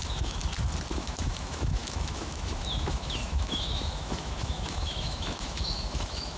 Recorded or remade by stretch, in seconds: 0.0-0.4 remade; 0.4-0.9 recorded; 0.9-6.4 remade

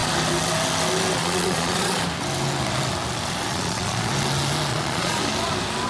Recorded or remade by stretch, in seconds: 0.0-1.2 recorded; 1.2-2.0 remade; 2.0-3.5 recorded; 3.5-4.1 remade; 4.1-4.7 recorded; 4.7-5.2 remade; 5.2-5.9 recorded

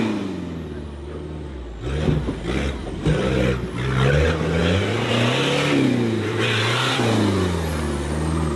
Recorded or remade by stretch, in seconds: 0.0-8.6 recorded

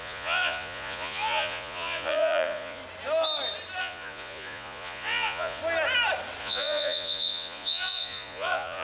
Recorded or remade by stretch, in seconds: 0.0-2.8 remade; 2.8-3.8 recorded; 3.8-5.6 remade; 5.6-6.4 recorded; 6.4-8.8 remade

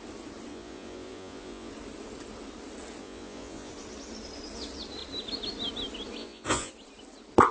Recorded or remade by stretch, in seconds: 0.0-0.5 recorded; 0.5-1.7 remade; 1.7-3.0 recorded; 3.0-3.7 remade; 3.7-6.2 recorded; 6.2-6.7 remade; 6.7-7.5 recorded

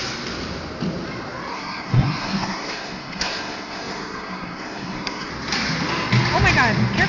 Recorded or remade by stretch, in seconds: 0.0-1.5 recorded; 1.5-5.3 remade; 5.3-7.1 recorded

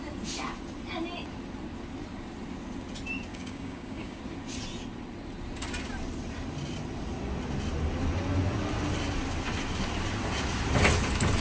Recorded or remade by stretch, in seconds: 0.0-3.3 recorded; 3.3-4.2 remade; 4.2-11.4 recorded

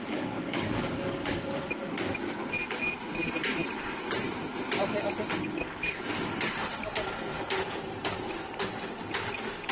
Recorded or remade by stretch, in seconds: 0.0-1.4 remade; 1.4-9.7 recorded